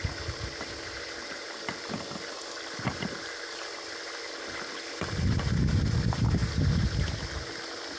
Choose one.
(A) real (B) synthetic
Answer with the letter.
A